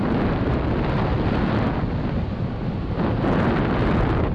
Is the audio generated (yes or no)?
no